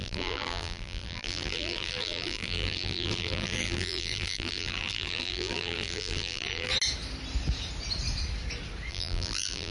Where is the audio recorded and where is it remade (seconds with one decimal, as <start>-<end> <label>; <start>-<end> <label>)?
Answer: 0.0-6.7 remade; 6.7-8.9 recorded; 8.9-9.7 remade